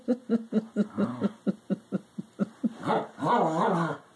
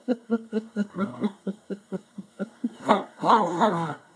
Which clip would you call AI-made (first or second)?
second